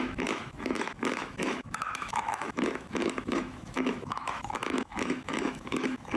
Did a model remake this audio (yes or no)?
yes